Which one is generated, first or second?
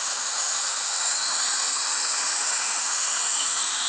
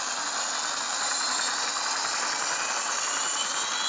first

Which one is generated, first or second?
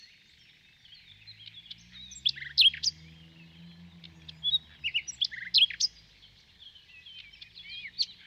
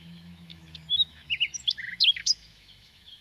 second